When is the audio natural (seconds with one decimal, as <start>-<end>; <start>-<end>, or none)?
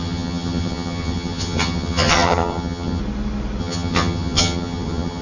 3.0-3.6